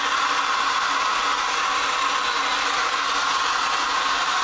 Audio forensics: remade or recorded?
recorded